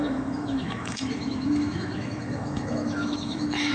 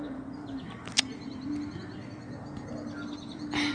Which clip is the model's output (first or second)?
first